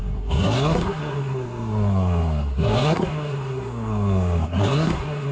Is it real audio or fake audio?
fake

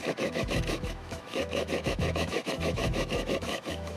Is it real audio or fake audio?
fake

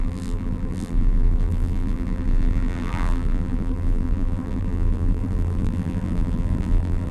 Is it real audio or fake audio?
fake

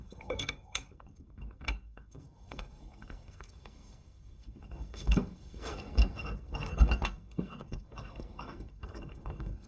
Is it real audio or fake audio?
fake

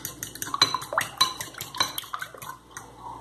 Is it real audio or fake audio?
real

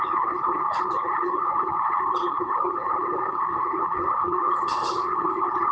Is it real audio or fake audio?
fake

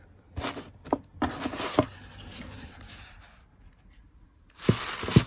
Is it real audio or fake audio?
real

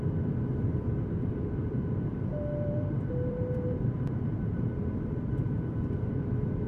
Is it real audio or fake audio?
fake